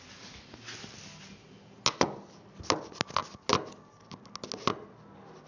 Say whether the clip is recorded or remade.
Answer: recorded